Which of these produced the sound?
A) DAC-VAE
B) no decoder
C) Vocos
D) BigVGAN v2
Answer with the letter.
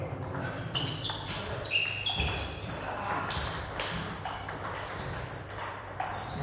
D